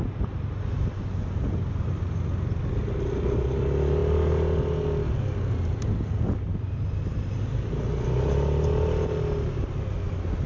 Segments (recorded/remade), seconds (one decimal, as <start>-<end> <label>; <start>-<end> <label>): 0.0-4.0 recorded; 4.0-4.6 remade; 4.6-10.5 recorded